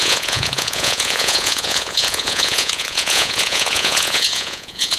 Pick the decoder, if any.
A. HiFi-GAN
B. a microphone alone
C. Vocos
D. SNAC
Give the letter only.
C